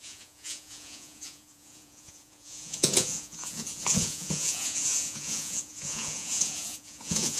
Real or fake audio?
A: fake